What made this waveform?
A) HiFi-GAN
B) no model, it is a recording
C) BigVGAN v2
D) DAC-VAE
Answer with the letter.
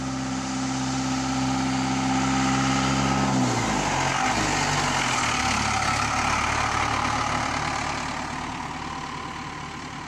B